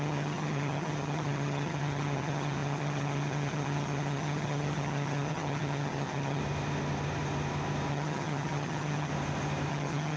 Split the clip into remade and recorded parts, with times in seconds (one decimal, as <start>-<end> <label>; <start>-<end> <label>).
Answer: 0.0-6.4 remade; 6.4-7.9 recorded; 7.9-9.1 remade; 9.1-9.7 recorded; 9.7-10.2 remade